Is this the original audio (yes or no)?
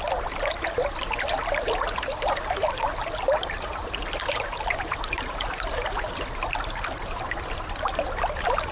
yes